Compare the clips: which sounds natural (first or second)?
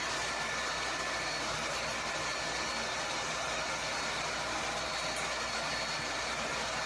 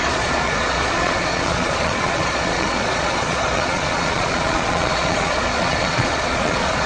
first